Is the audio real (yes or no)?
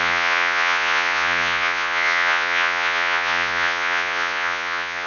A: no